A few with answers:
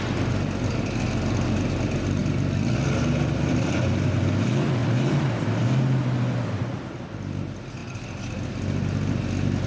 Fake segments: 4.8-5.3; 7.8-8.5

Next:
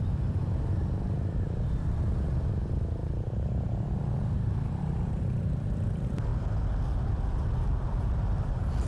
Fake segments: 0.0-6.3; 7.1-8.9

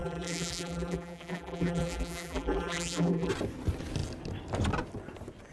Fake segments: 0.0-3.3

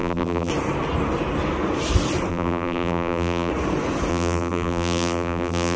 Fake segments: 0.0-0.5; 2.3-3.5; 4.1-5.8